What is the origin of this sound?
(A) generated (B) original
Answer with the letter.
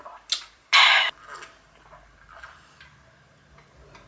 B